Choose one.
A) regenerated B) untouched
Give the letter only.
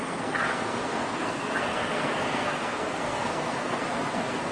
A